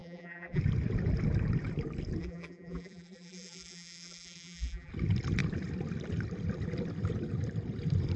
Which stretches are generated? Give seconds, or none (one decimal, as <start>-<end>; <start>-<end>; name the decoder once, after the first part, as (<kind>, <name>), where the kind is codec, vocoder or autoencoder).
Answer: 0.0-0.6 (vocoder, BigVGAN v2); 2.2-4.9